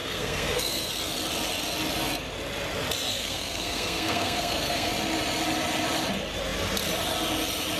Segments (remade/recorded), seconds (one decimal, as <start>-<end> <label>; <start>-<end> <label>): 0.0-0.9 remade; 0.9-3.1 recorded; 3.1-4.9 remade; 4.9-7.8 recorded